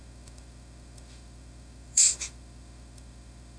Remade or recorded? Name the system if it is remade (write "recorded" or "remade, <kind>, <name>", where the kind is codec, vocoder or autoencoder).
remade, autoencoder, DAC-VAE